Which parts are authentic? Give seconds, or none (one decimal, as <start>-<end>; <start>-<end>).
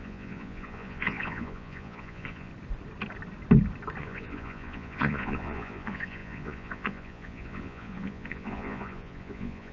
2.5-4.0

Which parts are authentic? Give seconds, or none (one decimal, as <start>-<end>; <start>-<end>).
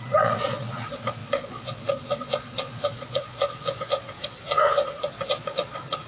none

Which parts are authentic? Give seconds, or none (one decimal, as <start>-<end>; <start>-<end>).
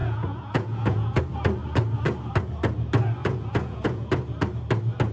1.2-3.2; 4.1-5.1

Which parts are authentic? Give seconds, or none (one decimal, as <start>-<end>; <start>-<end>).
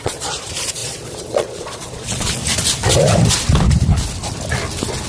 2.4-5.1